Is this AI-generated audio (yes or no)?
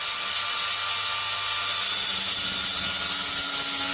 no